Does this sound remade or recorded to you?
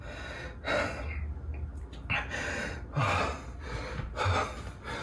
recorded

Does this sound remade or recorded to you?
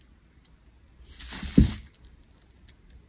recorded